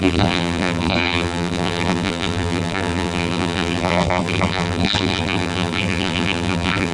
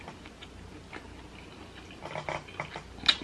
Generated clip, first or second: first